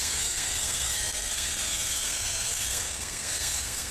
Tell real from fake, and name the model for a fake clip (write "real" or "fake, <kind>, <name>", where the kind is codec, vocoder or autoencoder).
fake, codec, SNAC